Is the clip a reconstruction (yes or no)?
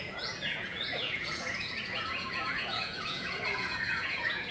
yes